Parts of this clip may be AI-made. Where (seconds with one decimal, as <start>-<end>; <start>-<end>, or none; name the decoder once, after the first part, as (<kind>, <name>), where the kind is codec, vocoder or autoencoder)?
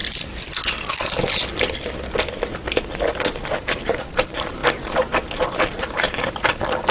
3.5-4.6 (vocoder, BigVGAN v2); 5.8-6.9